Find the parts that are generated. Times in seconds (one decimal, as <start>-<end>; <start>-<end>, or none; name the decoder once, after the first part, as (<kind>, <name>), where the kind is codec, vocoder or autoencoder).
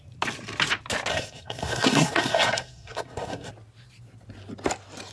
1.1-3.5 (codec, SNAC)